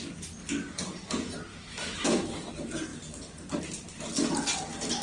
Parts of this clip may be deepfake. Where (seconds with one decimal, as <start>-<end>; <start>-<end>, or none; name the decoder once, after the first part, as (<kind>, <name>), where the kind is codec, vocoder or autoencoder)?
1.5-2.5 (autoencoder, DAC-VAE)